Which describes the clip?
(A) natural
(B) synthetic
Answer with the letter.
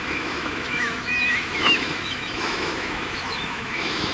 B